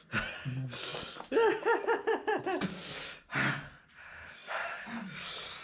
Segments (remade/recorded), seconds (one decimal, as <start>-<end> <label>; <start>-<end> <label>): 0.0-5.6 recorded